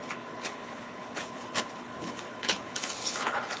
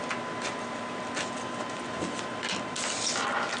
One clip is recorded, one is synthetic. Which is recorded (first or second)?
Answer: second